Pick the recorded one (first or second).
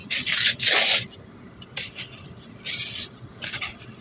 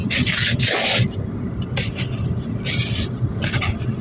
second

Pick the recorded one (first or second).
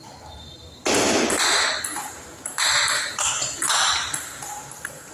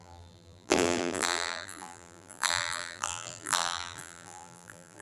first